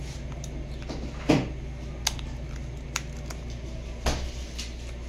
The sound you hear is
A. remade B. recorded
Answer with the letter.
B